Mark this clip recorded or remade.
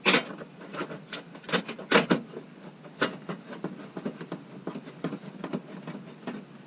recorded